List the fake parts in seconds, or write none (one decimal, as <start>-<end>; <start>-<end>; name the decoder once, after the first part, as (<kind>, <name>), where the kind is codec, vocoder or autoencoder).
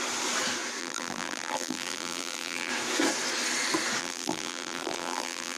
0.8-2.7 (vocoder, BigVGAN v2); 4.0-5.6